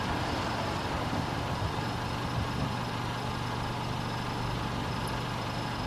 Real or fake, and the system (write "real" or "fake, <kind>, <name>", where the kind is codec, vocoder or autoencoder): real